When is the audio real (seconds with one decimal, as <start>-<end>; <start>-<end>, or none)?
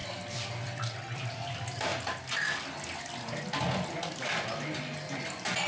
0.0-5.7